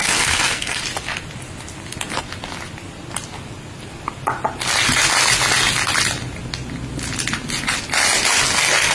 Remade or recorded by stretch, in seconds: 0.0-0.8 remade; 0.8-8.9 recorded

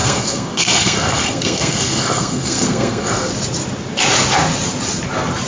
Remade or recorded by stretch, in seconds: 0.0-3.3 remade; 3.3-5.5 recorded

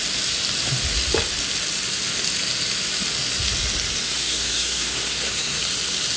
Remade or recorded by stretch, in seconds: 0.0-4.0 recorded; 4.0-5.6 remade; 5.6-6.2 recorded

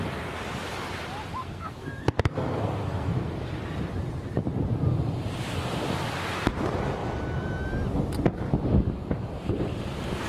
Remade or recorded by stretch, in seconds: 0.0-1.4 recorded; 1.4-3.3 remade; 3.3-10.3 recorded

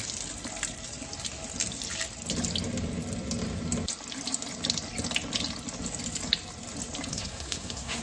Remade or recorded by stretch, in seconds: 0.0-7.1 recorded; 7.1-8.0 remade

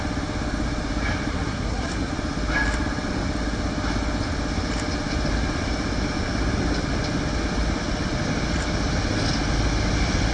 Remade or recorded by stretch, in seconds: 0.0-1.3 recorded; 1.3-2.1 remade; 2.1-10.3 recorded

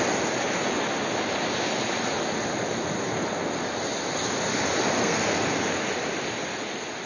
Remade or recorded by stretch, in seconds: 0.0-5.0 recorded; 5.0-5.5 remade; 5.5-7.1 recorded

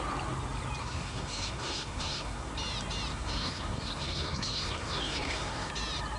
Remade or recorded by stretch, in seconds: 0.0-0.8 recorded; 0.8-2.5 remade; 2.5-3.1 recorded; 3.1-5.7 remade; 5.7-6.2 recorded